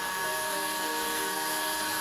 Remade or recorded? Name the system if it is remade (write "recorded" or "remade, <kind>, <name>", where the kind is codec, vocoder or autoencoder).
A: remade, codec, SNAC